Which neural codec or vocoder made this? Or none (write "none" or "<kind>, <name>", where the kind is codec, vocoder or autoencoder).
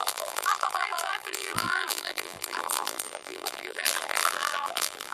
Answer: vocoder, BigVGAN v2